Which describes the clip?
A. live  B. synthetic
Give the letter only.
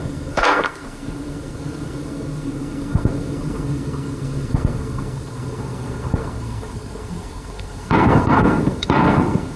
B